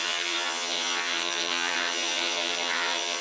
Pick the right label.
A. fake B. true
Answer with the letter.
A